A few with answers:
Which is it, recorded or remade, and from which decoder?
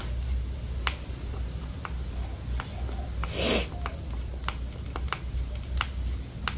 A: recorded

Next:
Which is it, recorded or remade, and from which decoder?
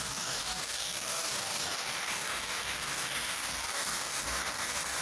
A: remade, codec, DAC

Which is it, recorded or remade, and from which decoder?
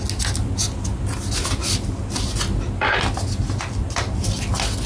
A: recorded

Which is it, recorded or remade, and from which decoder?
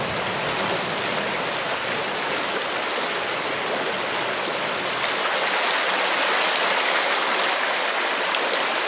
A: recorded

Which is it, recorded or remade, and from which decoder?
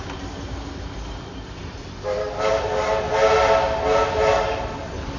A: recorded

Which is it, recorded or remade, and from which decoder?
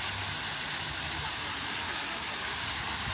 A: recorded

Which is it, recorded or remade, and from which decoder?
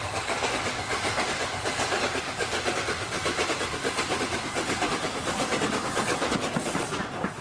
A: remade, codec, DAC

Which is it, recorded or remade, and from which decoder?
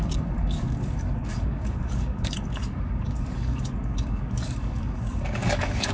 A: remade, codec, DAC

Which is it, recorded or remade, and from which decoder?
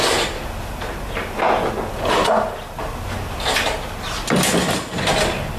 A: recorded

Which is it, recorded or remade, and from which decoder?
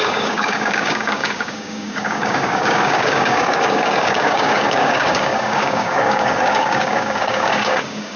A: remade, codec, DAC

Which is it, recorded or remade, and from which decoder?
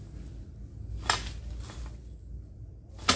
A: recorded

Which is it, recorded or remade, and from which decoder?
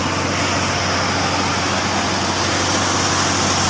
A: recorded